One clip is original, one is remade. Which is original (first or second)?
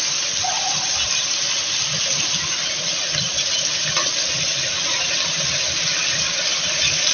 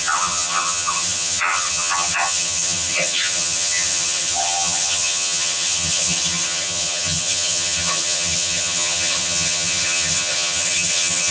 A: first